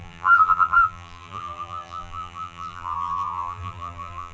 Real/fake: fake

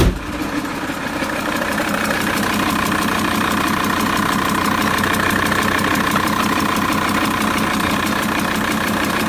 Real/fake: fake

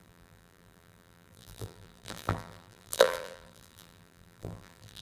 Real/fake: fake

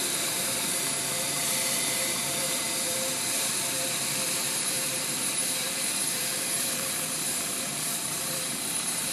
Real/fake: fake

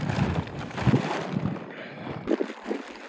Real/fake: fake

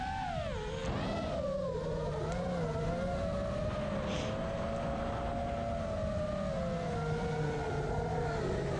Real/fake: real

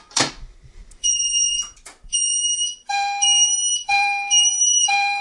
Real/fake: fake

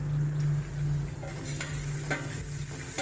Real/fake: real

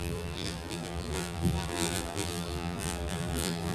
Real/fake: fake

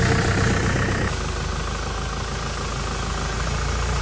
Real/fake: real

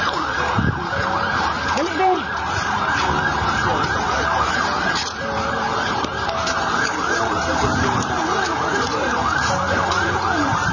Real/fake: fake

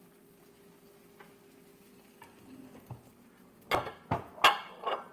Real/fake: real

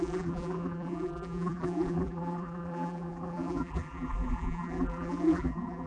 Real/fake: fake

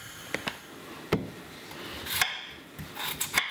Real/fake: real